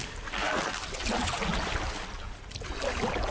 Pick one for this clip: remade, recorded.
recorded